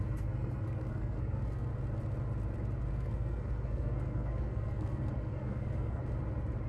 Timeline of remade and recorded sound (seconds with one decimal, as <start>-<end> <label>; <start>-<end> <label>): 0.0-1.7 remade; 1.7-2.9 recorded; 2.9-6.0 remade; 6.0-6.7 recorded